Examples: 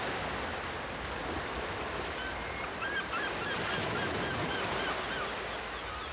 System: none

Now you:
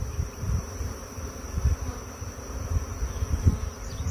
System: vocoder, BigVGAN v2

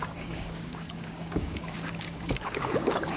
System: codec, DAC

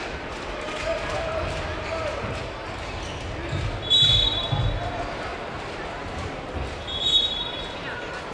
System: none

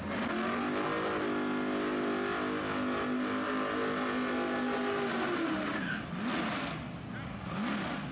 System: none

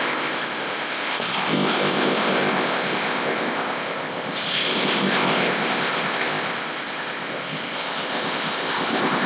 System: codec, ZipCodec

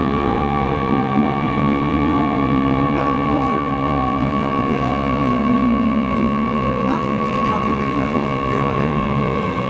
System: vocoder, WaveNeXt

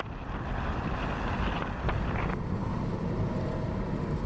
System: none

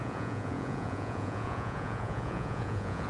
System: vocoder, Vocos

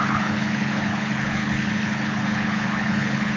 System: codec, HILCodec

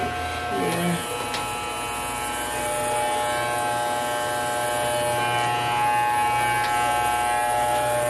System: none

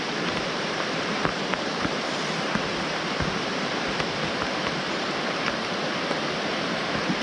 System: vocoder, BigVGAN v2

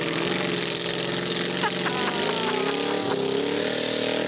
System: none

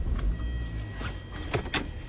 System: none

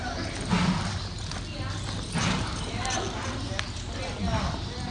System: none